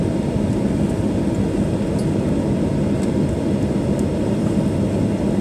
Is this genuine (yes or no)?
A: yes